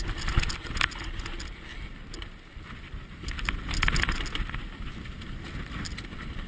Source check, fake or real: real